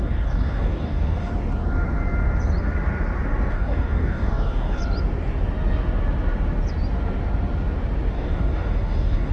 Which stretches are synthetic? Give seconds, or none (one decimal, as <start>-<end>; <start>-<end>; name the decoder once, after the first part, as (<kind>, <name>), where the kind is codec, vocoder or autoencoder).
0.0-1.3 (codec, DAC); 3.5-4.8; 8.1-9.3